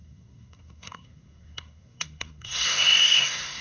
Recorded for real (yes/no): no